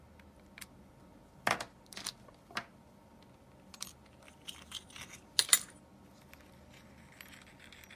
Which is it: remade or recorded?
recorded